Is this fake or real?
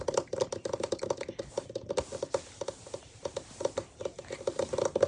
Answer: real